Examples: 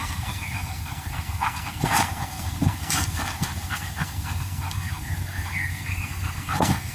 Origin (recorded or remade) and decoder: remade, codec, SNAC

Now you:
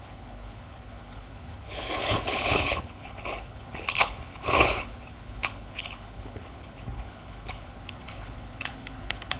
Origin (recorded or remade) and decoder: remade, codec, HILCodec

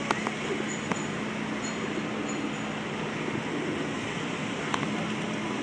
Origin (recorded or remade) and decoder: recorded